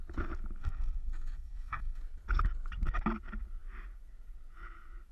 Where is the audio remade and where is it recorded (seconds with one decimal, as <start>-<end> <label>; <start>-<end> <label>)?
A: 0.0-0.6 recorded; 0.6-2.0 remade; 2.0-5.1 recorded